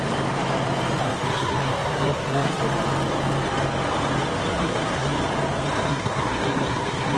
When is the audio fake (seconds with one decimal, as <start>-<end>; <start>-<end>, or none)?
1.0-2.6; 4.5-5.2; 5.9-7.2